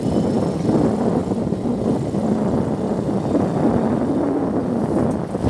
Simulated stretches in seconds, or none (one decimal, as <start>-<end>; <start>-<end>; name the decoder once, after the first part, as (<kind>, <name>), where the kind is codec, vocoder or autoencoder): none